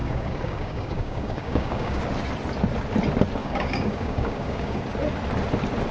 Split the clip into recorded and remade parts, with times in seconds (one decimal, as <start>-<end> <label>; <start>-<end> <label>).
0.0-2.0 remade; 2.0-3.4 recorded; 3.4-4.8 remade; 4.8-5.9 recorded